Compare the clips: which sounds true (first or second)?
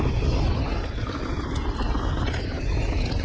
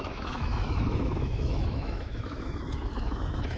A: first